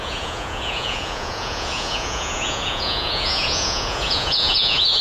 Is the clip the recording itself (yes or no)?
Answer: no